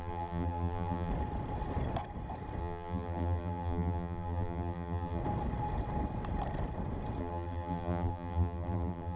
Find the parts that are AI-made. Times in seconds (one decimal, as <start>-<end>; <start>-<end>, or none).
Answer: 0.0-1.1; 2.6-5.2; 7.2-9.2